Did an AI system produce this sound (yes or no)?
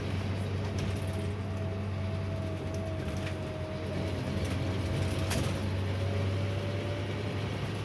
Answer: no